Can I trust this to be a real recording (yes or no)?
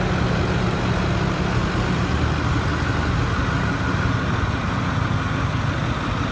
yes